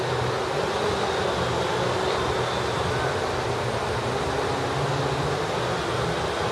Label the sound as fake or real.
real